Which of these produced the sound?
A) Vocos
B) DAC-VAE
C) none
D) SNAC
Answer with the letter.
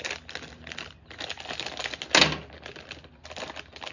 C